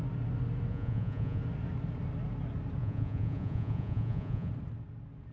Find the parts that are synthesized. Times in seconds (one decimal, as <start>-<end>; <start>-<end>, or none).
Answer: 0.7-1.4; 2.8-4.5